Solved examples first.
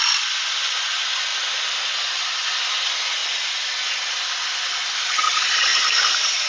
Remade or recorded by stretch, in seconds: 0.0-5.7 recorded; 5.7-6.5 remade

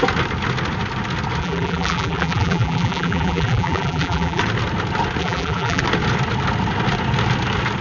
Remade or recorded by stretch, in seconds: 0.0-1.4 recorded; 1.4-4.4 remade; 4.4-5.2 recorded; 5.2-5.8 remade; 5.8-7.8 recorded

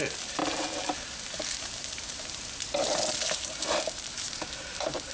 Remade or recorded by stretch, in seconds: 0.0-0.4 remade; 0.4-1.2 recorded; 1.2-5.1 remade

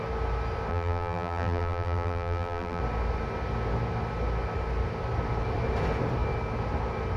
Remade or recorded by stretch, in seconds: 0.0-0.7 recorded; 0.7-2.8 remade; 2.8-7.2 recorded

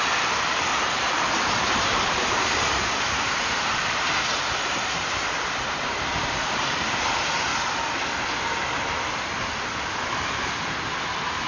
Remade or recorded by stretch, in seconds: 0.0-7.5 remade; 7.5-8.8 recorded; 8.8-9.3 remade; 9.3-11.5 recorded

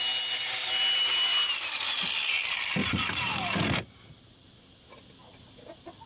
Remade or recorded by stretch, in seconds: 0.0-1.3 recorded; 1.3-1.8 remade; 1.8-2.8 recorded; 2.8-3.6 remade; 3.6-6.1 recorded